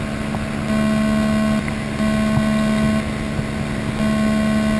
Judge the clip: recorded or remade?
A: recorded